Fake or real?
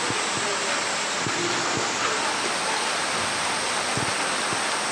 real